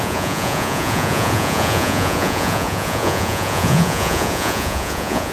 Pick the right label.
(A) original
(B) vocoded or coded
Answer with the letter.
B